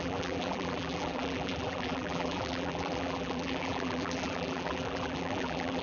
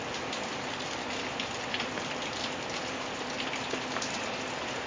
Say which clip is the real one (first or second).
second